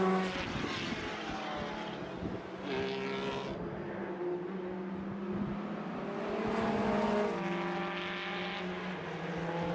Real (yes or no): yes